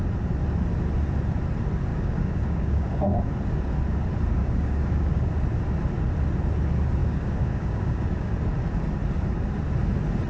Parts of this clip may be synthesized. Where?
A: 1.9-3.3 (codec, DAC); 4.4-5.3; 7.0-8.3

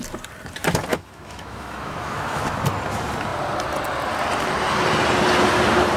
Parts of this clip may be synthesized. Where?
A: 0.9-2.4 (autoencoder, DAC-VAE)

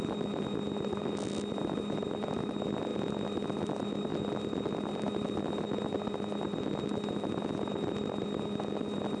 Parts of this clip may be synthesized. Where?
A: none